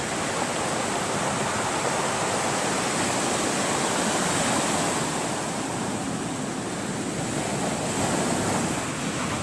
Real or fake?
real